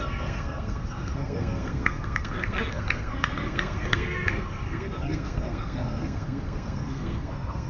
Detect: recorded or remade remade